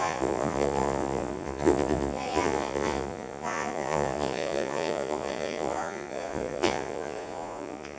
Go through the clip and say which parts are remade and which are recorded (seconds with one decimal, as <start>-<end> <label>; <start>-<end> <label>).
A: 0.0-8.0 remade